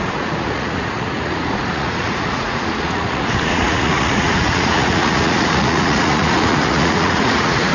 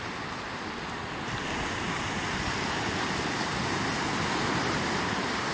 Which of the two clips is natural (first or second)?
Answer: second